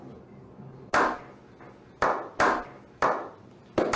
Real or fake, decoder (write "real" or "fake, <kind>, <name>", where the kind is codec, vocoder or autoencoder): real